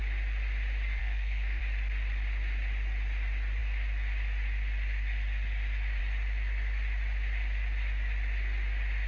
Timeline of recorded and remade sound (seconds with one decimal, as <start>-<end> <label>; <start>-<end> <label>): 0.0-1.0 recorded; 1.0-1.6 remade; 1.6-9.1 recorded